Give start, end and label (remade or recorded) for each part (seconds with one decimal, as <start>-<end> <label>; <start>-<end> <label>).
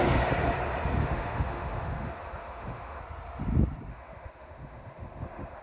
0.0-1.0 recorded; 1.0-3.0 remade; 3.0-3.9 recorded; 3.9-5.6 remade